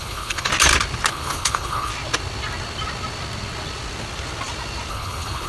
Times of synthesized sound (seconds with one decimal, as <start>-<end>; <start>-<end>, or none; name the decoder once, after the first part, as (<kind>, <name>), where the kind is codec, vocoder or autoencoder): 0.0-0.5 (codec, HILCodec); 1.1-1.9; 4.9-5.5